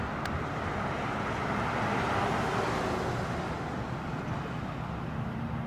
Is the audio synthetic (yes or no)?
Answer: no